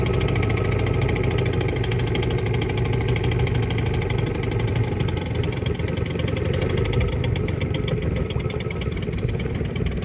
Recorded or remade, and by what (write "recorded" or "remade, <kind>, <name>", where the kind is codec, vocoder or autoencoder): recorded